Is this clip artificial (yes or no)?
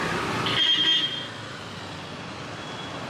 no